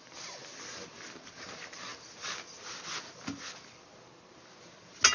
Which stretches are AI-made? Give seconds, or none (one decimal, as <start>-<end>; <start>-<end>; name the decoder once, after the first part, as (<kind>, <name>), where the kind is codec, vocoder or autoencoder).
none